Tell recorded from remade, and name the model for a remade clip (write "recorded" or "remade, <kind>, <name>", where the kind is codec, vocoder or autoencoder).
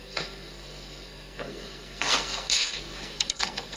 remade, codec, SNAC